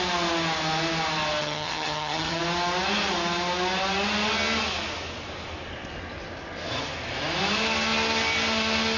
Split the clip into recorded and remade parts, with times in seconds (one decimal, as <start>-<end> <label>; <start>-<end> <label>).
0.0-1.4 recorded; 1.4-2.4 remade; 2.4-9.0 recorded